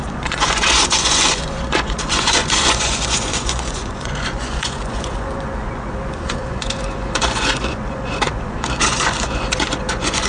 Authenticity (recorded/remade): remade